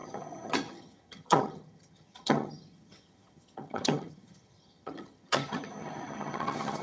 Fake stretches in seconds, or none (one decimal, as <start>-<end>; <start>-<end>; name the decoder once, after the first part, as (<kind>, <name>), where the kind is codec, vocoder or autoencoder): 0.0-6.8 (vocoder, HiFi-GAN)